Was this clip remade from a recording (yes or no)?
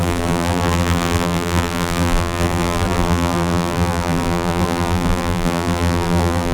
yes